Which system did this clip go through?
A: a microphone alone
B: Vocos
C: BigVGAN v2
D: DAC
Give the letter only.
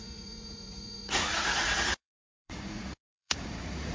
B